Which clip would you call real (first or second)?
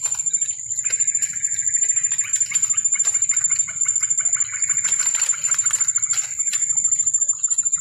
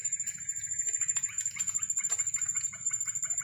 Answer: first